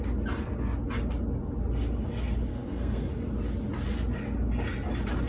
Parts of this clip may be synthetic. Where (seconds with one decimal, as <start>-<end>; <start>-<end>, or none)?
2.5-3.1